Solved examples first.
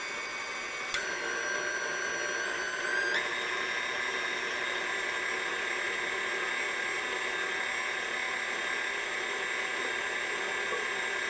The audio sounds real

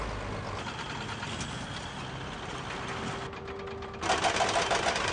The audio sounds real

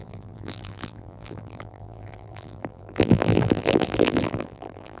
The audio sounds fake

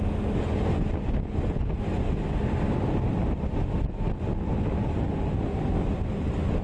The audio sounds real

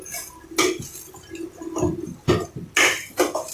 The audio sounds real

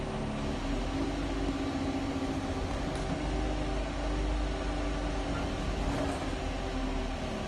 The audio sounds real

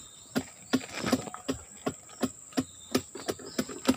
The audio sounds real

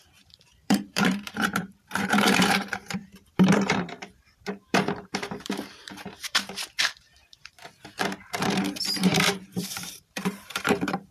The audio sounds fake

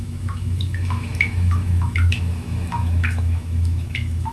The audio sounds fake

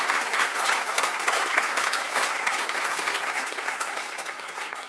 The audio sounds fake